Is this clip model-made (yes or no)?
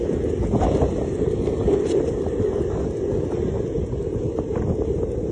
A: no